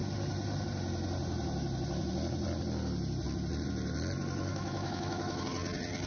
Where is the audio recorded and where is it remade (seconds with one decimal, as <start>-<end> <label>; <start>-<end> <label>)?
0.0-4.5 recorded; 4.5-5.4 remade; 5.4-6.1 recorded